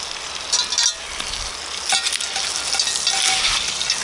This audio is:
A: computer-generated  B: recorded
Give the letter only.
B